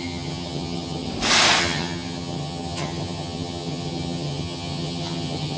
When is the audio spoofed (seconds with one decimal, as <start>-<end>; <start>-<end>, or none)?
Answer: 0.0-1.1; 1.6-5.6

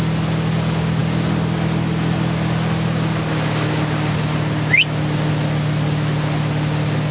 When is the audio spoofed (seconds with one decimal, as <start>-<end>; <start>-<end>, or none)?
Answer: none

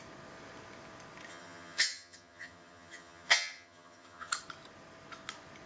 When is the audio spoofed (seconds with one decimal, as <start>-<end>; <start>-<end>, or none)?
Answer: 1.3-4.3

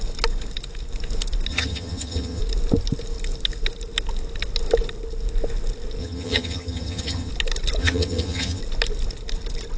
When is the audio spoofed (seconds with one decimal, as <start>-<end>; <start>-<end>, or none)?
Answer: 1.5-2.4; 6.0-7.3; 7.8-8.6

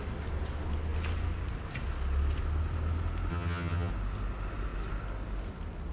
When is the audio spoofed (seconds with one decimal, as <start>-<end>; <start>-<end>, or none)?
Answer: 3.3-3.9

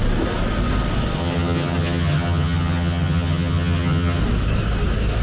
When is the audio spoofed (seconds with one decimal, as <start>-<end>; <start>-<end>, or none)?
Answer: 1.2-4.2

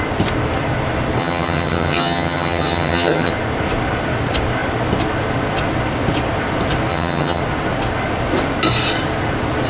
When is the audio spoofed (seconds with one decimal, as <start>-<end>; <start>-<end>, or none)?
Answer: 1.2-3.3; 6.9-7.4

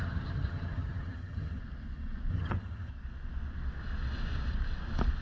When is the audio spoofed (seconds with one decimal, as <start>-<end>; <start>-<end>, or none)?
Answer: 0.0-1.6; 2.3-2.9